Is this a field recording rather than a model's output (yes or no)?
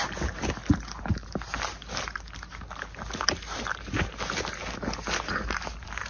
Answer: yes